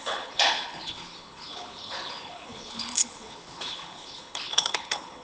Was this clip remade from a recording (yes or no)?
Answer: yes